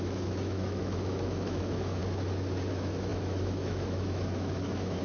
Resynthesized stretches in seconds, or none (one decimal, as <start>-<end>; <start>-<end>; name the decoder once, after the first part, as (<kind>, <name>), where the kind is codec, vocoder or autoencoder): 0.0-2.0 (autoencoder, DAC-VAE); 2.7-5.0